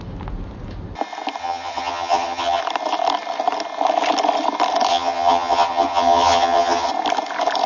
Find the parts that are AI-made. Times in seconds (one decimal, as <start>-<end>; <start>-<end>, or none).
1.4-2.6; 4.9-6.9